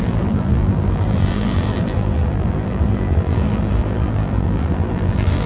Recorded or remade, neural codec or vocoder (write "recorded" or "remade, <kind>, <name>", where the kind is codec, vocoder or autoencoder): remade, vocoder, BigVGAN v2